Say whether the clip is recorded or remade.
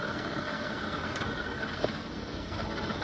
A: remade